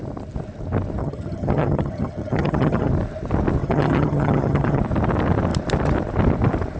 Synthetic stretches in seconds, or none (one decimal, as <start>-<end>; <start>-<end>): 1.0-2.9; 3.6-4.8